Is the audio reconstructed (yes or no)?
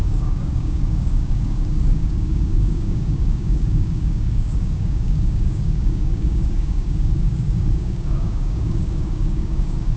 yes